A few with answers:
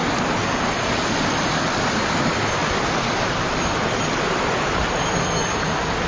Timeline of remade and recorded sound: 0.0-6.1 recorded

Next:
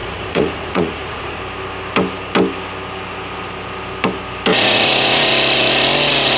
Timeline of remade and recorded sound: 0.0-1.4 remade; 1.4-4.5 recorded; 4.5-5.3 remade; 5.3-6.4 recorded